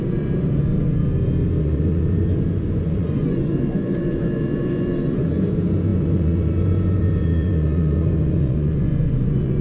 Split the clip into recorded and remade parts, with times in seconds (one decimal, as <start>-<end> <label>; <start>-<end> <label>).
0.0-0.7 remade; 0.7-1.6 recorded; 1.6-9.6 remade

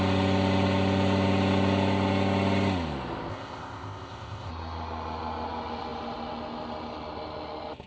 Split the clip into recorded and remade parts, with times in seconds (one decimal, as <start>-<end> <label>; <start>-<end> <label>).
0.0-3.3 recorded; 3.3-4.5 remade; 4.5-7.9 recorded